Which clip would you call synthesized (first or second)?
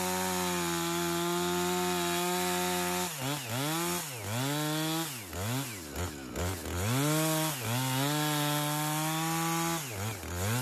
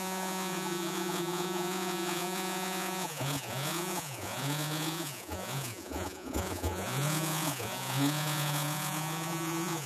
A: second